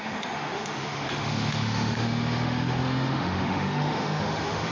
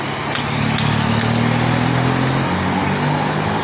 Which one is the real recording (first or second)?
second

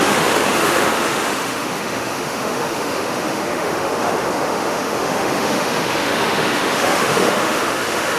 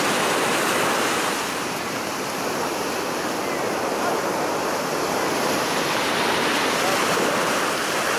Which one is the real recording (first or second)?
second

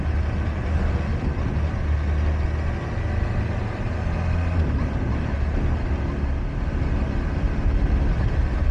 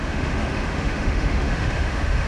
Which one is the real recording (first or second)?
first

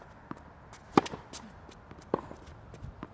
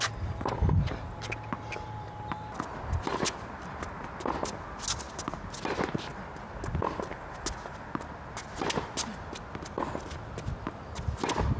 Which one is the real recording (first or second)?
second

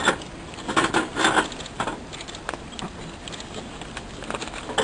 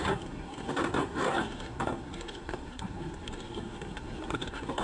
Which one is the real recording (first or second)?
first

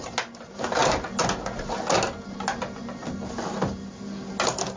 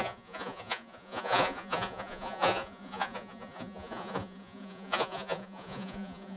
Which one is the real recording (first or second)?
first